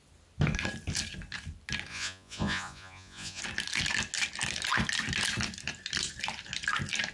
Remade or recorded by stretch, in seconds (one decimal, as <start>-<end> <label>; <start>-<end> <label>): 0.0-1.9 recorded; 1.9-3.4 remade; 3.4-7.1 recorded